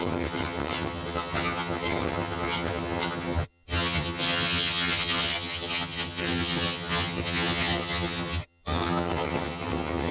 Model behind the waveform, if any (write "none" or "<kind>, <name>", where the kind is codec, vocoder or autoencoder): vocoder, HiFi-GAN